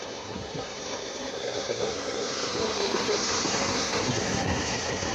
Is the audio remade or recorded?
remade